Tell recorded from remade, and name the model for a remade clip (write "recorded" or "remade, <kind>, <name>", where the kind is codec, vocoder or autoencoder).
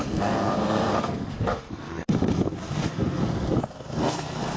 remade, codec, SNAC